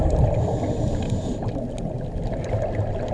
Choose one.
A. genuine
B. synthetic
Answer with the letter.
A